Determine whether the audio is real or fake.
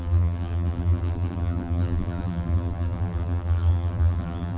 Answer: fake